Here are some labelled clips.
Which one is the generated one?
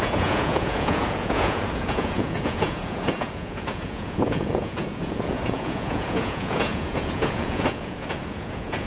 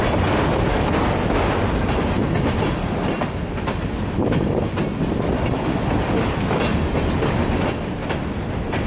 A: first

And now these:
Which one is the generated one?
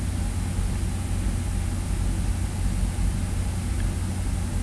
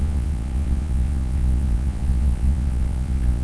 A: second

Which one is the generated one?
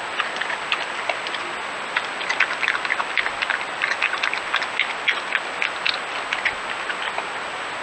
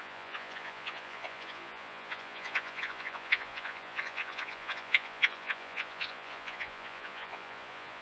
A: second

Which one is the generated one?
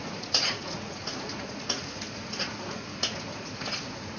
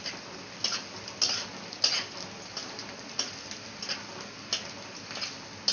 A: first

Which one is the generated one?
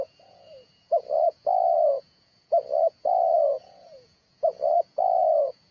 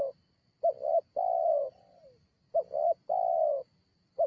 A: first